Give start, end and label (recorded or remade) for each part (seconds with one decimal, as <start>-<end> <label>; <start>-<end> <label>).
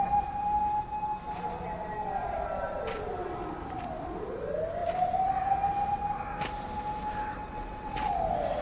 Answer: 0.0-7.4 recorded; 7.4-7.9 remade; 7.9-8.6 recorded